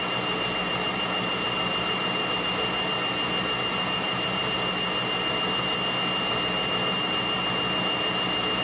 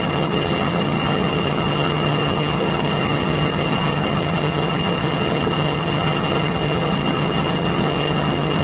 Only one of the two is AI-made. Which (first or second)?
second